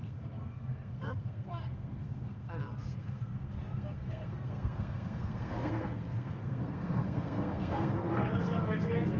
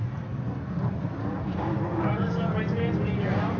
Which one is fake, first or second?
first